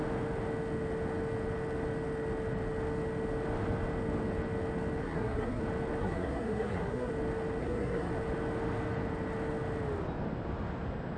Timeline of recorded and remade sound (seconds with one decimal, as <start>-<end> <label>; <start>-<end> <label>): 0.0-5.0 recorded; 5.0-5.6 remade; 5.6-6.0 recorded; 6.0-7.1 remade; 7.1-7.6 recorded; 7.6-8.1 remade; 8.1-11.2 recorded